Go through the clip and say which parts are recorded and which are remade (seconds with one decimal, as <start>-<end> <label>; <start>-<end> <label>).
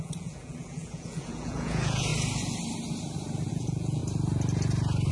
0.0-2.1 remade; 2.1-3.5 recorded; 3.5-4.0 remade; 4.0-5.1 recorded